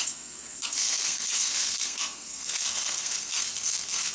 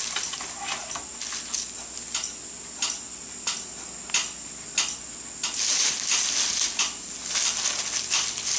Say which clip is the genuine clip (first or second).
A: second